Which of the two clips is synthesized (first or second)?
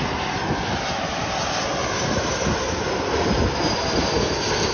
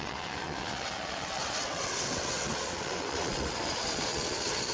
second